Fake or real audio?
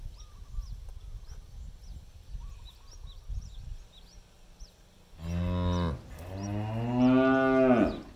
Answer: real